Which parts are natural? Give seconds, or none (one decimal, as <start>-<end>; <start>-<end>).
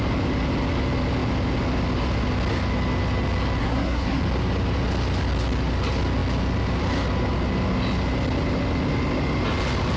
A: 0.0-3.6; 4.2-10.0